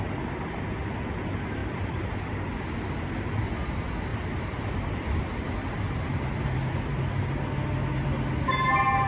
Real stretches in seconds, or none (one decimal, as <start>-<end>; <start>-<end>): 0.0-1.6; 2.2-4.1; 7.0-9.1